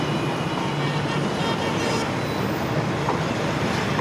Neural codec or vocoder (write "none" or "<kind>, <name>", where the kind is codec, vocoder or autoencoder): none